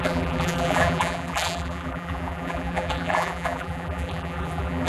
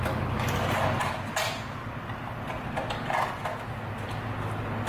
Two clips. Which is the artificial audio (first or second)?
first